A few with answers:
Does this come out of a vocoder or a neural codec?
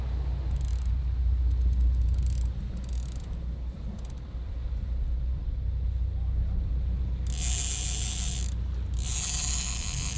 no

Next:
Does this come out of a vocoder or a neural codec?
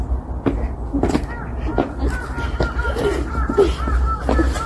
no